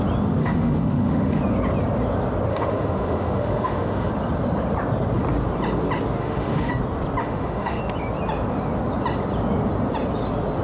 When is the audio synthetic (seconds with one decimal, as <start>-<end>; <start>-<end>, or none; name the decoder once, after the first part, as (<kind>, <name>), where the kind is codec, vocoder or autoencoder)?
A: 0.4-1.4 (autoencoder, DAC-VAE); 2.5-4.1; 6.2-6.7; 7.2-7.8